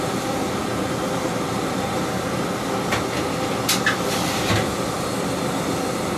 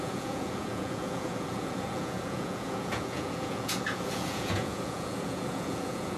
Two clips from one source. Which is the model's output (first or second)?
second